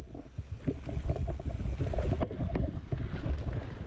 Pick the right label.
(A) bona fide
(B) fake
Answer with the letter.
A